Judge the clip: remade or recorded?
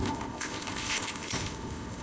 remade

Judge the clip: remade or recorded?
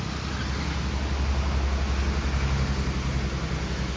recorded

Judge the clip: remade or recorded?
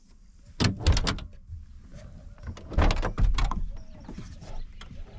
recorded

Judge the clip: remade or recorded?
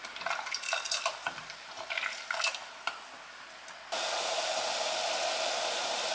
recorded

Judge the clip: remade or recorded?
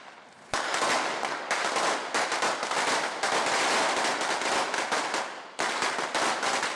recorded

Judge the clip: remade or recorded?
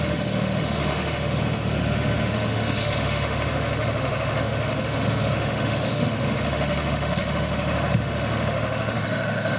remade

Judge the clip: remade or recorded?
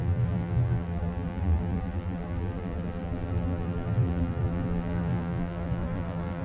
remade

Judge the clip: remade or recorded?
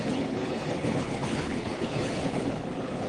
remade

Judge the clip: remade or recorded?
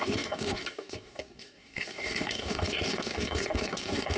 remade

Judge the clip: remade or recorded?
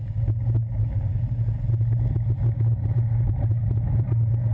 recorded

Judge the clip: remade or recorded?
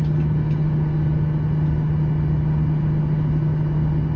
recorded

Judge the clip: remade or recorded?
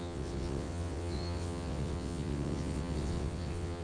remade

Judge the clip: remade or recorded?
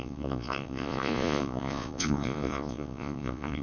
remade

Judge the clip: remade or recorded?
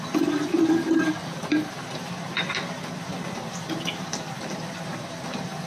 recorded